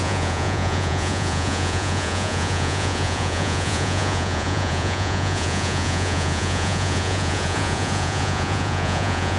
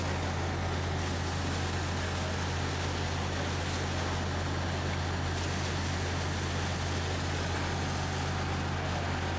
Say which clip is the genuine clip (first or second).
second